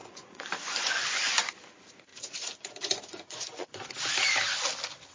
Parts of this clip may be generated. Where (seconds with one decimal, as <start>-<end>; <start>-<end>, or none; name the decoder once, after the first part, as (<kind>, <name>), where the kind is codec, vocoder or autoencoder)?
0.0-1.5 (vocoder, Vocos); 2.1-3.9